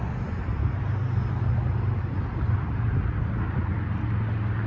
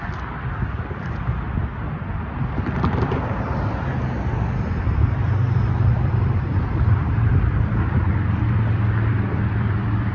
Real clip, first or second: first